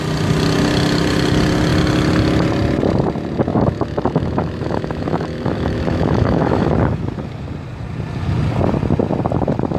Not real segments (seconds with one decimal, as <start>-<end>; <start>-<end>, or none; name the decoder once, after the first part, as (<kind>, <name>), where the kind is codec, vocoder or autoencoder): 3.5-6.7 (autoencoder, DAC-VAE)